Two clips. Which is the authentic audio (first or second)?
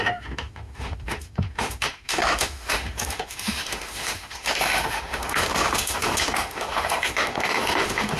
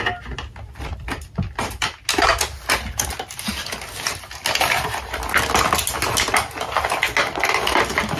second